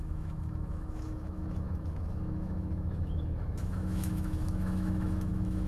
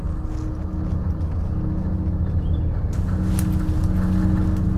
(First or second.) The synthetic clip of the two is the first